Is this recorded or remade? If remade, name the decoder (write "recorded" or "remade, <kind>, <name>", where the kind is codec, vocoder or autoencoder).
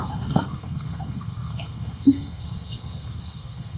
remade, codec, SNAC